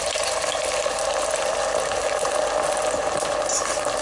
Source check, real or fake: real